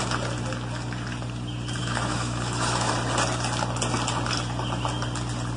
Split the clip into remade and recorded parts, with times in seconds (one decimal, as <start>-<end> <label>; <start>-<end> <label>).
0.0-1.8 recorded; 1.8-2.9 remade; 2.9-5.6 recorded